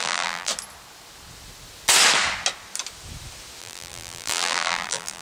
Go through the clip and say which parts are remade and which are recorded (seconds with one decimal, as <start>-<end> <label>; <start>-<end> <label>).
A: 0.0-0.5 remade; 0.5-3.6 recorded; 3.6-5.2 remade